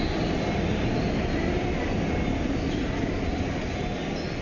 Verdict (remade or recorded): recorded